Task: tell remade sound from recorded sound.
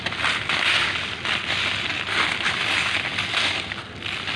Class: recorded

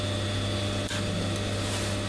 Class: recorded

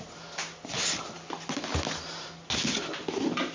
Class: recorded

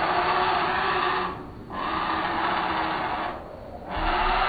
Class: recorded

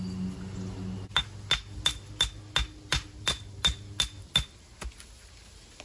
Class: recorded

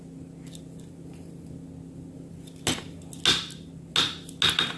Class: recorded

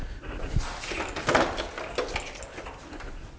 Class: recorded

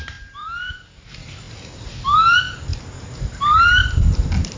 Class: recorded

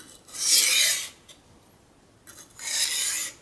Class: recorded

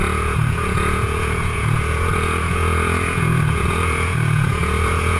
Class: remade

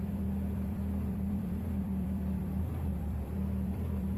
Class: remade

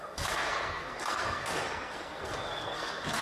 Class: remade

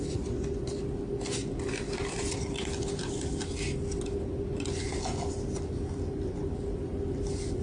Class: recorded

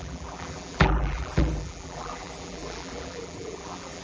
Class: remade